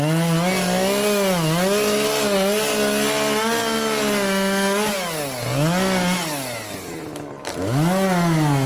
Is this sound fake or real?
real